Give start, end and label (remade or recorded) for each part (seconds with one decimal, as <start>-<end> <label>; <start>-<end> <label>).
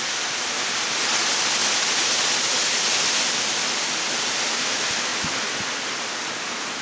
0.0-6.8 recorded